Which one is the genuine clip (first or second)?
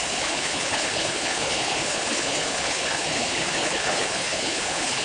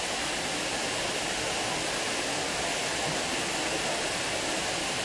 second